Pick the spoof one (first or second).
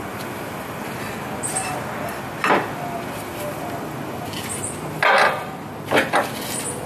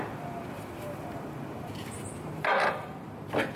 second